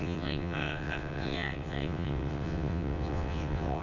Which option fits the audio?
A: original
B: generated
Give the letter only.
B